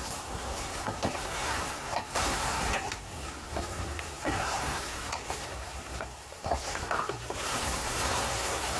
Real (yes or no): no